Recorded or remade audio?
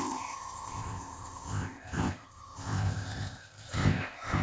remade